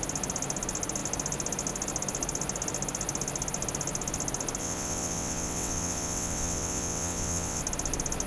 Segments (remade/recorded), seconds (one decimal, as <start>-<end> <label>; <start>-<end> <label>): 0.0-4.6 recorded; 4.6-7.6 remade; 7.6-8.3 recorded